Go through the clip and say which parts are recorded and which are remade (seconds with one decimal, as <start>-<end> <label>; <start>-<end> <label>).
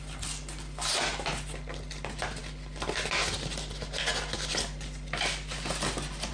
0.0-6.3 recorded